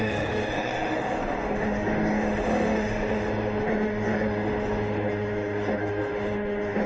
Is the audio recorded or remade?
remade